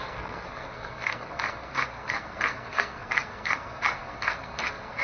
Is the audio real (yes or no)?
no